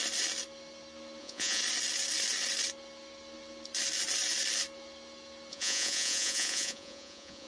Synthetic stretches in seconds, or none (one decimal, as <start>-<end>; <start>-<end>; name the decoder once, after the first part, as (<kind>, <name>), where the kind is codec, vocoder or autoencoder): 1.2-1.6 (vocoder, Vocos); 5.5-7.5